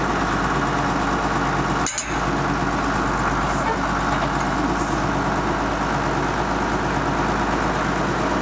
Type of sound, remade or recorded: recorded